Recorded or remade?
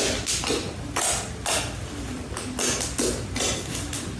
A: recorded